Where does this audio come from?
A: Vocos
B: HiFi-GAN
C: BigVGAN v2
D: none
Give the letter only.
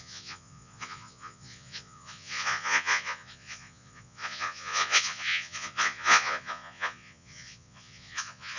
A